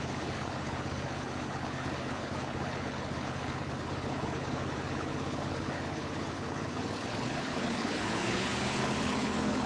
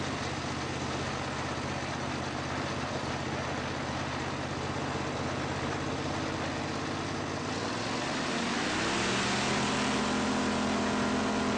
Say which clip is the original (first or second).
second